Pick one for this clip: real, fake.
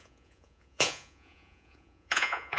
fake